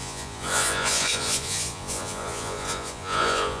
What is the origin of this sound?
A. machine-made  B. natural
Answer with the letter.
A